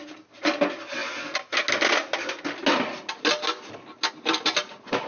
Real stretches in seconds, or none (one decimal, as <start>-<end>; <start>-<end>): 0.0-5.1